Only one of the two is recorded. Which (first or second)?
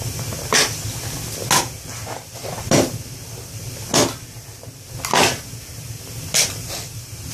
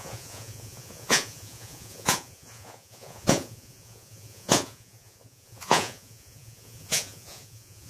first